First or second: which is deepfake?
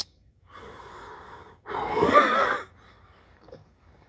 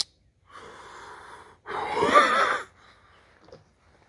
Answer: first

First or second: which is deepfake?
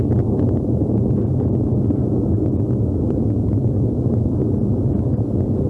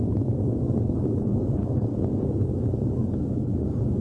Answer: second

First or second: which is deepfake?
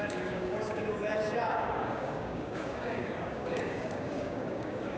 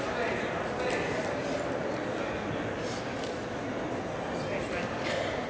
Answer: first